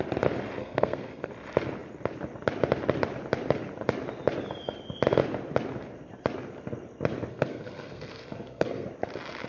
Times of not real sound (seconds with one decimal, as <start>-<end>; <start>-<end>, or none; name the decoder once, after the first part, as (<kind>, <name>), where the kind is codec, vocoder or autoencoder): 0.6-1.3 (codec, SNAC); 7.3-8.9